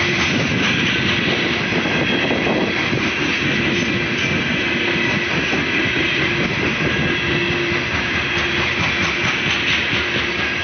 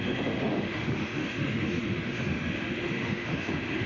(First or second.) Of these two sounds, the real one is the first